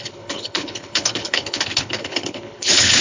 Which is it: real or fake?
fake